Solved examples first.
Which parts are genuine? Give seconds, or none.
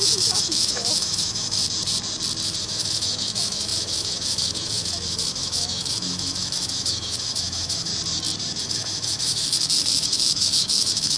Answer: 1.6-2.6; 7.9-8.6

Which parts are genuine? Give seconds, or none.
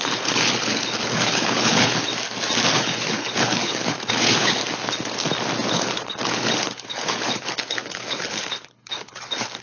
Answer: 2.1-2.7; 4.6-5.7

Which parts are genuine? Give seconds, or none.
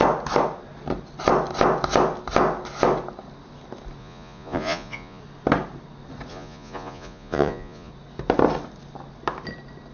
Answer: 0.0-4.0; 5.2-6.3; 7.9-9.9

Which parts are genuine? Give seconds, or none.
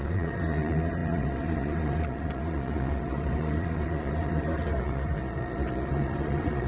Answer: none